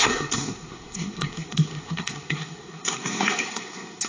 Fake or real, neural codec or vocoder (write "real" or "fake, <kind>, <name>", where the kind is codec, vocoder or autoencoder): fake, codec, SNAC